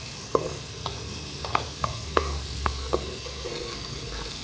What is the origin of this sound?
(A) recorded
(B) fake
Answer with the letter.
B